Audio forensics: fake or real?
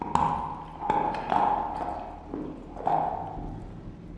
real